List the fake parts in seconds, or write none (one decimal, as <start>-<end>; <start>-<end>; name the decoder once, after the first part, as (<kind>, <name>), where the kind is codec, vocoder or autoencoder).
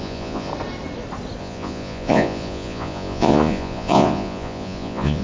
0.0-0.5 (vocoder, Vocos); 1.4-5.2